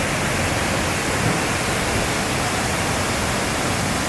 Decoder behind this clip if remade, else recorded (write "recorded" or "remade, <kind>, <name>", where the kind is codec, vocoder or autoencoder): recorded